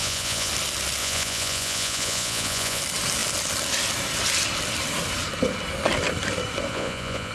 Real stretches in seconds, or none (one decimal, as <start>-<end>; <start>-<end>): 0.5-1.0; 2.8-6.7